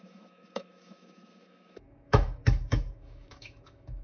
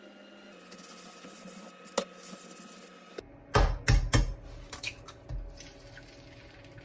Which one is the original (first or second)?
second